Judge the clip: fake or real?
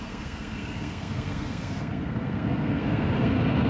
fake